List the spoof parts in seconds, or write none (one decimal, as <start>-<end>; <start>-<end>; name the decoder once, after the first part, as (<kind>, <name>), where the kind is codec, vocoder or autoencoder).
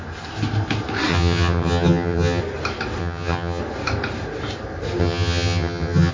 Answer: 1.1-2.4 (vocoder, HiFi-GAN); 3.0-3.6; 5.0-6.1